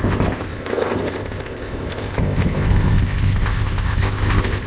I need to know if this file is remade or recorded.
remade